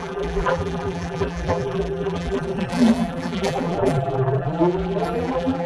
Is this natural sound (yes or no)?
no